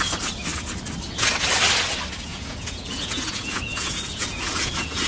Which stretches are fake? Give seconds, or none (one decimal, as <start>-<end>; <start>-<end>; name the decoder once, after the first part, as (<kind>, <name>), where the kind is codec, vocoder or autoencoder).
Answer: 2.3-5.1 (vocoder, Vocos)